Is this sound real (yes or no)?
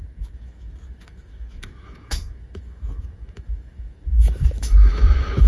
no